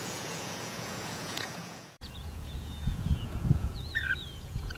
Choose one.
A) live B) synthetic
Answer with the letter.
B